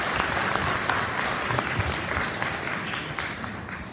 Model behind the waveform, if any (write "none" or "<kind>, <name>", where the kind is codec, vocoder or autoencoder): none